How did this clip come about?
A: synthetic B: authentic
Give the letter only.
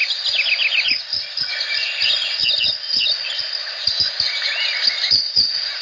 B